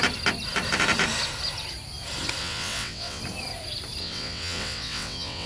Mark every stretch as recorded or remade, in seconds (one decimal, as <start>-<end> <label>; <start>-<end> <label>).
0.0-2.4 recorded; 2.4-3.2 remade; 3.2-4.0 recorded; 4.0-5.5 remade